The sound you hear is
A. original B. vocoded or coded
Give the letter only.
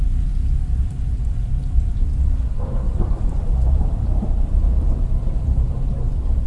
B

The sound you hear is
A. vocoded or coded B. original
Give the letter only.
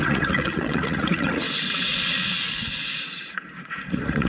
A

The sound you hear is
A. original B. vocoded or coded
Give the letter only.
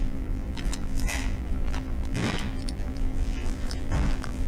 B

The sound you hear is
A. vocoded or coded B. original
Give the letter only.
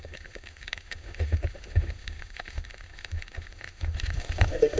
A